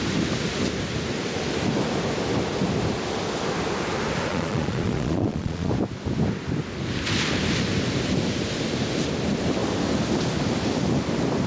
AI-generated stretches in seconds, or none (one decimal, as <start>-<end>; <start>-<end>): 4.3-5.7